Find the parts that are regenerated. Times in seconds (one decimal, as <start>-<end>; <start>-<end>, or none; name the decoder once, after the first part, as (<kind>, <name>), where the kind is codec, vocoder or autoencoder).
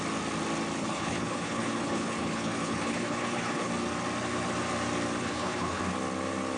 0.8-3.7 (codec, HILCodec); 5.2-5.8